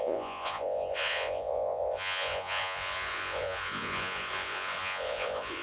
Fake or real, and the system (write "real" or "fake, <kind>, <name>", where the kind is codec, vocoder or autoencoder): fake, vocoder, Vocos